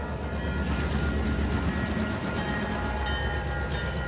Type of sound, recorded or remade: recorded